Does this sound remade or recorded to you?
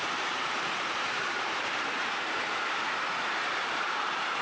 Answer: remade